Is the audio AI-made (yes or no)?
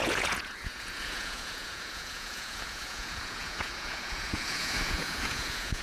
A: yes